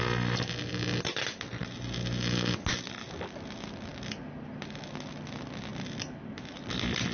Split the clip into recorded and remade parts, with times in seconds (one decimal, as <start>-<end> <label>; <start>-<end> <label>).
0.0-7.1 recorded